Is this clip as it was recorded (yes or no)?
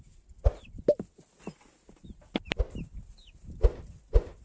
yes